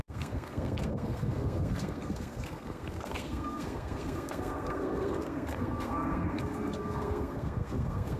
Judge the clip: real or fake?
fake